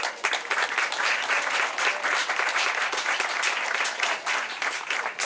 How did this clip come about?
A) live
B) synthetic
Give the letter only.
A